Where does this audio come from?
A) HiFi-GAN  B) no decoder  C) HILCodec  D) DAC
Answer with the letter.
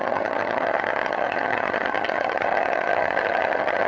A